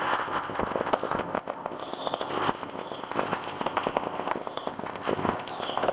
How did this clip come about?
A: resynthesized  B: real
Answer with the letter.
A